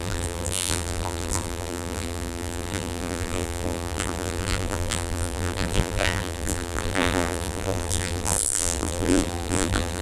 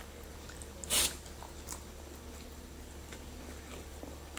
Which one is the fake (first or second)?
first